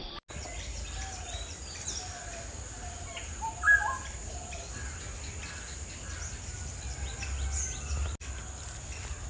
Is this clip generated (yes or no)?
no